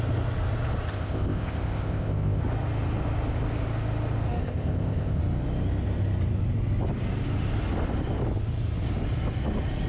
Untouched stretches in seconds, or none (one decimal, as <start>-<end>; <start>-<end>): 0.0-0.9; 2.4-4.4; 5.2-9.9